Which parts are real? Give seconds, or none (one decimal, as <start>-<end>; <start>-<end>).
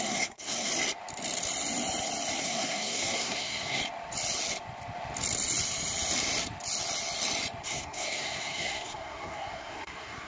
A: 0.7-2.4; 3.8-7.6